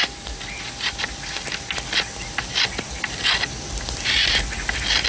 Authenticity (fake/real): real